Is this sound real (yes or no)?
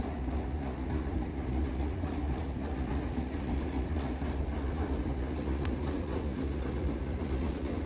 no